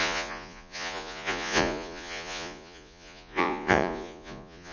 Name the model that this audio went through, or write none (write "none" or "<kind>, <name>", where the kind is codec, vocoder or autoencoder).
vocoder, Vocos